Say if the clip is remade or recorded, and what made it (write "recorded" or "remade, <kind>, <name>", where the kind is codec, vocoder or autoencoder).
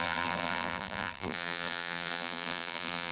remade, vocoder, BigVGAN v2